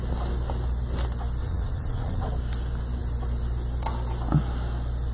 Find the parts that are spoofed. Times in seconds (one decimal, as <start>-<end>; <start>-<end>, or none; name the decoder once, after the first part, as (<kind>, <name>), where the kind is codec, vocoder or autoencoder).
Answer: 1.4-2.3 (vocoder, WaveNeXt)